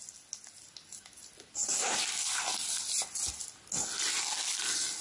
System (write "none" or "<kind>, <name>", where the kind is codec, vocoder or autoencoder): none